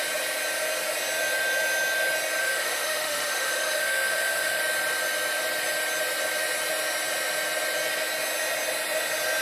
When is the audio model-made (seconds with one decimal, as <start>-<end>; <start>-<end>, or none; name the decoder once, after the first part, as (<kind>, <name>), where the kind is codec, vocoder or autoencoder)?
2.4-4.6 (autoencoder, DAC-VAE)